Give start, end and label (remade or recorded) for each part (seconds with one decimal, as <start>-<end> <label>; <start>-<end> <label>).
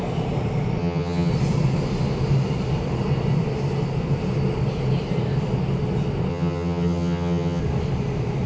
0.0-0.8 recorded; 0.8-1.3 remade; 1.3-6.3 recorded; 6.3-7.6 remade; 7.6-8.5 recorded